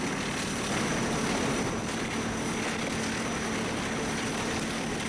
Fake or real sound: real